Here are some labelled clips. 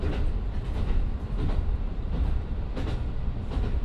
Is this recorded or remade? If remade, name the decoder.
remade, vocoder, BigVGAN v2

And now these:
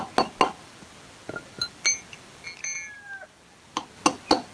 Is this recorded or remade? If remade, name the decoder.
recorded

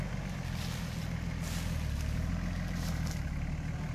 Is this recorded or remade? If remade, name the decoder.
recorded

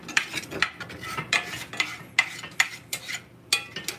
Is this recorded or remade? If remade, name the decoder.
recorded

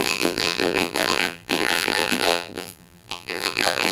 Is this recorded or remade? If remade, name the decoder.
remade, vocoder, BigVGAN v2